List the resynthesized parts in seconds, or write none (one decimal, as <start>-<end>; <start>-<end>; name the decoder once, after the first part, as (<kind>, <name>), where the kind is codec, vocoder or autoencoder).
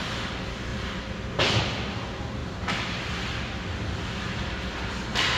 none